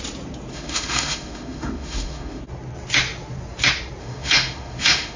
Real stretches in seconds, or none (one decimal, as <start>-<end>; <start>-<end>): 0.0-0.5; 2.4-4.0